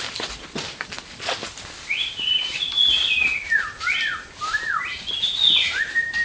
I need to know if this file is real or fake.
real